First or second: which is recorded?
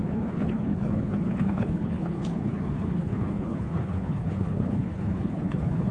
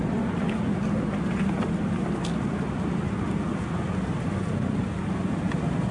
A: second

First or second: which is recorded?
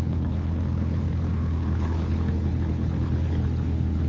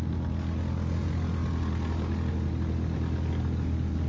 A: second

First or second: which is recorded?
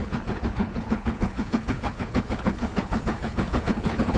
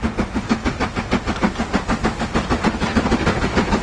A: second